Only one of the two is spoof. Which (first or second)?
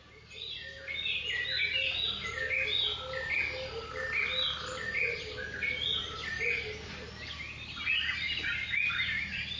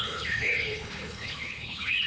second